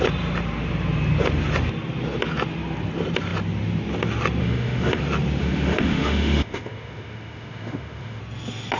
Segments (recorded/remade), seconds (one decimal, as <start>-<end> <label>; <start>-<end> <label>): 0.0-4.4 recorded; 4.4-5.0 remade; 5.0-5.4 recorded; 5.4-8.2 remade; 8.2-8.8 recorded